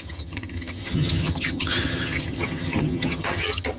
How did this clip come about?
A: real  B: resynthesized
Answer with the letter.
B